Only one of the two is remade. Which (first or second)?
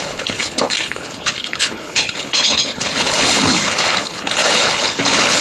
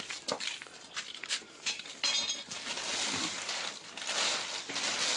first